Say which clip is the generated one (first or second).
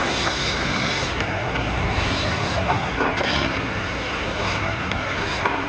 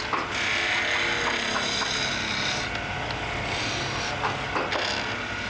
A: first